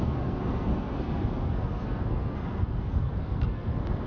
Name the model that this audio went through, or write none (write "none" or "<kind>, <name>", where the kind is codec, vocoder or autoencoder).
codec, SNAC